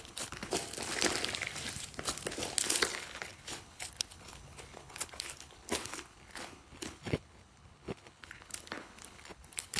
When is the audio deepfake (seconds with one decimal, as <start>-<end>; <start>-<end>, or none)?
0.0-0.5; 2.6-9.8